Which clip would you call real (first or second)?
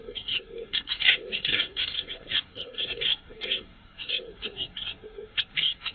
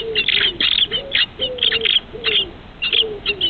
second